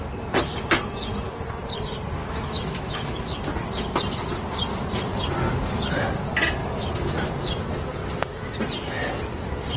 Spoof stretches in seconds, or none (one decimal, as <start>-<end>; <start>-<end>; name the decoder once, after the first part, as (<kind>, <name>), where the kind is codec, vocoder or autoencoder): 2.2-3.4 (autoencoder, DAC-VAE); 6.6-7.3